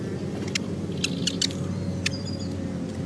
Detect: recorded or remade recorded